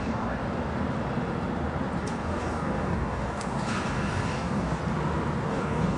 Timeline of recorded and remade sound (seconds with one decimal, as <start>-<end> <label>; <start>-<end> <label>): 0.0-0.4 remade; 0.4-2.0 recorded; 2.0-4.8 remade; 4.8-5.5 recorded; 5.5-6.0 remade